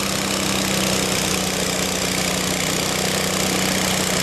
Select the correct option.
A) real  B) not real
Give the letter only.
A